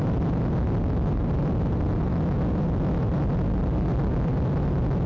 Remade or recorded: recorded